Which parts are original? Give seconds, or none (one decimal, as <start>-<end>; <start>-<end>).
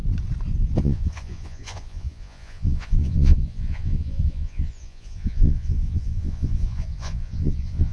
0.0-0.8